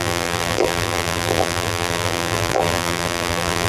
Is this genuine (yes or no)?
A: no